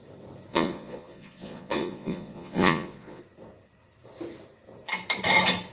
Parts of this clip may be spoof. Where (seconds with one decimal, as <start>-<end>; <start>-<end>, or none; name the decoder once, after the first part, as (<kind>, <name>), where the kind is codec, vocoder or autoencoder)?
0.5-3.2 (vocoder, Vocos)